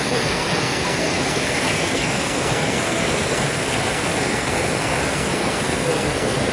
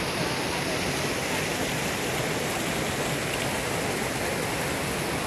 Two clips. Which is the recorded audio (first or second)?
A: second